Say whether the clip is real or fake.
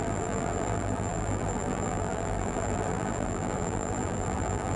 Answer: fake